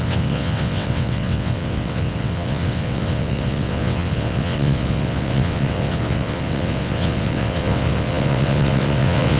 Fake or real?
fake